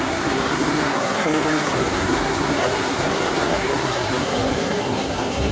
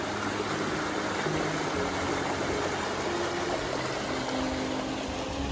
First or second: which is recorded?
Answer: second